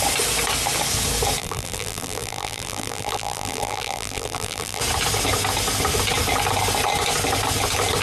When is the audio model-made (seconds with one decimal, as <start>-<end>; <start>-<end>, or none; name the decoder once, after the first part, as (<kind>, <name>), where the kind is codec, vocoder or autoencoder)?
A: 1.4-4.8 (vocoder, BigVGAN v2)